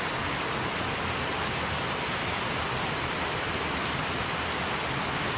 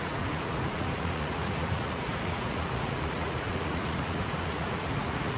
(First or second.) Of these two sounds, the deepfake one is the second